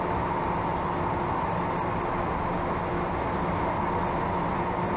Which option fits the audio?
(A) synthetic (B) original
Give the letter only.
B